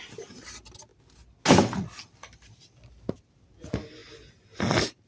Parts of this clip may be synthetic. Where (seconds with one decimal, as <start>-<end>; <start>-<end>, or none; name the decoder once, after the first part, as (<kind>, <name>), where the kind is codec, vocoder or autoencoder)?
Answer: none